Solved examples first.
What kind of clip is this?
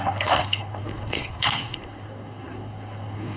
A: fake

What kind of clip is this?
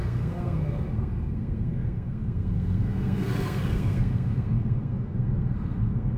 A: fake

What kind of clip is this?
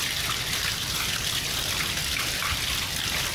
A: real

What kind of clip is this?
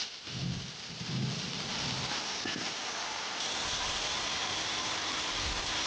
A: real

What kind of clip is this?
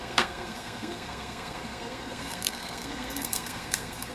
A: fake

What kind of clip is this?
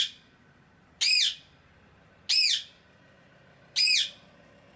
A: real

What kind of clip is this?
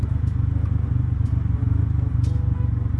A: real